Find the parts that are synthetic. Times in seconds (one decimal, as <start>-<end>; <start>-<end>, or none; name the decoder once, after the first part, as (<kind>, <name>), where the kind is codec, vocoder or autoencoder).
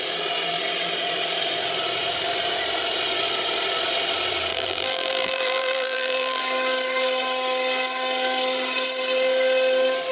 4.5-6.4 (vocoder, BigVGAN v2)